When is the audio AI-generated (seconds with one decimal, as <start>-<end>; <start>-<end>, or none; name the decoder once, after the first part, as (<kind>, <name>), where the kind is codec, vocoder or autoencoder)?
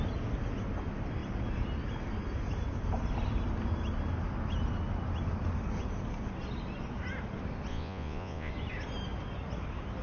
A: 7.7-8.5 (vocoder, Vocos)